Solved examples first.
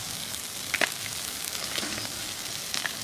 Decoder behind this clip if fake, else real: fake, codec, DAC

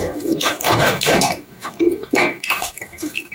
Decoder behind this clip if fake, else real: fake, codec, DAC